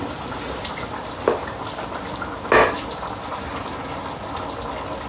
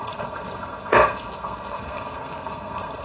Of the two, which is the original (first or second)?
first